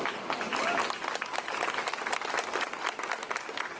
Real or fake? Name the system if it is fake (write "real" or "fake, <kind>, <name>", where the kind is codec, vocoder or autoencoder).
real